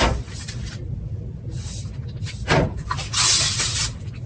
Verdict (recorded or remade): recorded